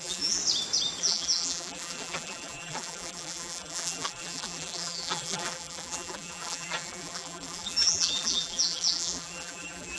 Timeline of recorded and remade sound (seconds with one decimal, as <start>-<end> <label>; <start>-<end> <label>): 0.0-0.4 remade; 0.4-1.0 recorded; 1.0-10.0 remade